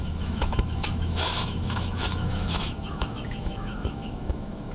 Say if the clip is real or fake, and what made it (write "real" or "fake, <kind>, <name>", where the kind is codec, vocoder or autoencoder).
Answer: fake, autoencoder, DAC-VAE